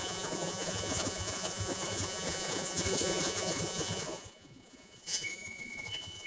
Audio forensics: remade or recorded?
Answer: remade